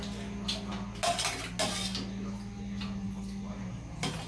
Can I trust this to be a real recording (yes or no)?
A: yes